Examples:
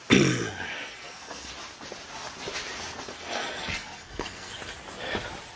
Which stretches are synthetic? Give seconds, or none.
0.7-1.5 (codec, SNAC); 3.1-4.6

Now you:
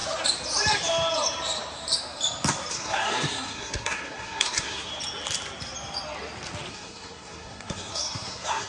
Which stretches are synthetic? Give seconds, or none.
2.7-4.9 (codec, SNAC); 6.7-8.7

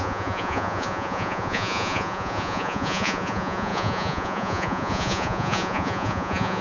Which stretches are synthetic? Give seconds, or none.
0.0-6.6 (vocoder, Vocos)

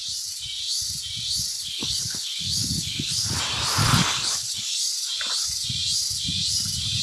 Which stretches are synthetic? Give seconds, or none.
1.5-3.4 (codec, HILCodec); 3.8-4.7

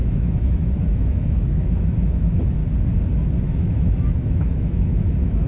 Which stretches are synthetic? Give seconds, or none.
0.0-2.6 (autoencoder, DAC-VAE); 3.4-5.5

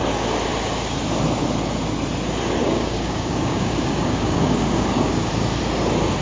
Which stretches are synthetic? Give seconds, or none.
2.6-5.3 (codec, DAC)

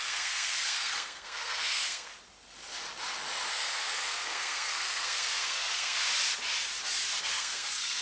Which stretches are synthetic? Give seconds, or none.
0.0-2.1 (codec, SNAC); 3.5-6.1; 7.2-8.0

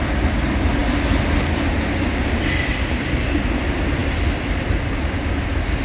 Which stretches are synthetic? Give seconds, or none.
none